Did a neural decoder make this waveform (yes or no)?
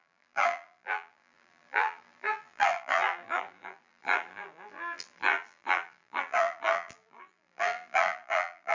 yes